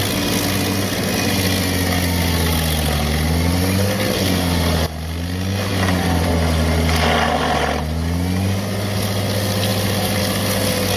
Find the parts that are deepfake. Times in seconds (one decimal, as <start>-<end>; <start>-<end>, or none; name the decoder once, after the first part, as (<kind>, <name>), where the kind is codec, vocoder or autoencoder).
5.7-6.3 (vocoder, BigVGAN v2); 9.7-10.2

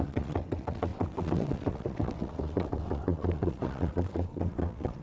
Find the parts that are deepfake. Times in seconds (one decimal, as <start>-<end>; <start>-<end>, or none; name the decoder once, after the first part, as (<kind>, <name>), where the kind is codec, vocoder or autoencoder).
0.0-5.0 (vocoder, WaveNeXt)